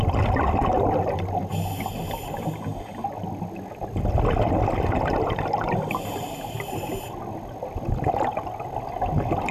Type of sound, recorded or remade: recorded